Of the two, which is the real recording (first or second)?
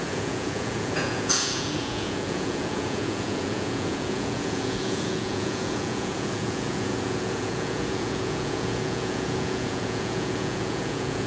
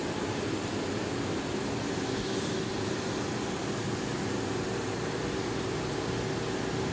second